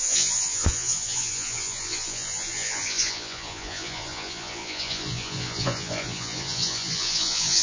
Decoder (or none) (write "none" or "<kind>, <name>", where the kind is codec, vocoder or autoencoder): vocoder, Vocos